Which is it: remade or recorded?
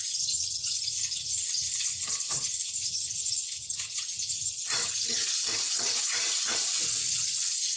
remade